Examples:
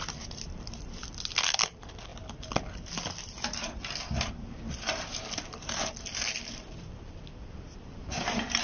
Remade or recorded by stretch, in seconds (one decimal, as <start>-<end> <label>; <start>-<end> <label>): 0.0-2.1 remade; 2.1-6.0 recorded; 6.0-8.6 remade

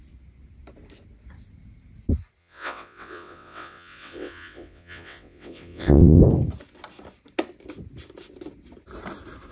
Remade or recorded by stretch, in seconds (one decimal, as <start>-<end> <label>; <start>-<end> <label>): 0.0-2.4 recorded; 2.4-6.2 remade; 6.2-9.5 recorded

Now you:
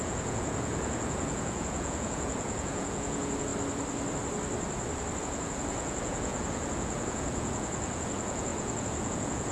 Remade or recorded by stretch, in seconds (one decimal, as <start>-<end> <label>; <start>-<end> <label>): 0.0-3.5 remade; 3.5-5.2 recorded; 5.2-9.5 remade

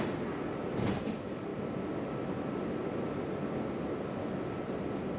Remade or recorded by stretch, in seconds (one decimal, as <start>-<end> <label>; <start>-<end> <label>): 0.0-5.2 recorded

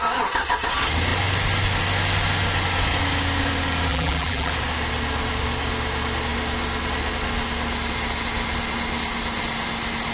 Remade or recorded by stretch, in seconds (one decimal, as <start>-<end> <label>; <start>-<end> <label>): 0.0-3.9 recorded; 3.9-4.5 remade; 4.5-10.1 recorded

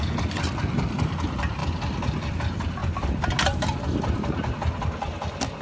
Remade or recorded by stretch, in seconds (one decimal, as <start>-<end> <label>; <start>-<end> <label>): 0.0-5.6 recorded